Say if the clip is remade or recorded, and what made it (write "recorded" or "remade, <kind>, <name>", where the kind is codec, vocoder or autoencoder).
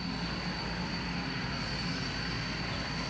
recorded